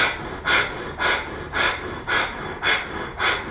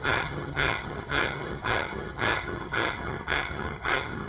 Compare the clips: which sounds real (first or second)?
first